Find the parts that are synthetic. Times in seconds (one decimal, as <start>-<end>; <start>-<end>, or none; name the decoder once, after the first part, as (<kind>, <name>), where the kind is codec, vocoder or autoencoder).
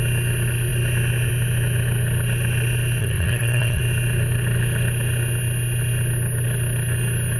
3.0-3.8 (codec, SNAC)